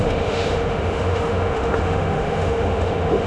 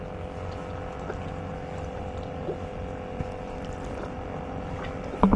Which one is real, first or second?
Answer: second